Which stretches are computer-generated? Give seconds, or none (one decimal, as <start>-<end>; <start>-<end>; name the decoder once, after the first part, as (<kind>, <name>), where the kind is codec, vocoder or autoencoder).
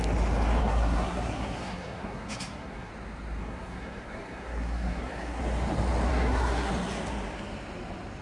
0.6-2.9 (codec, SNAC); 3.4-5.4; 6.1-6.7